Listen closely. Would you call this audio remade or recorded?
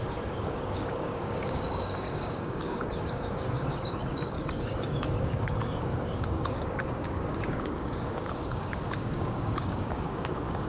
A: remade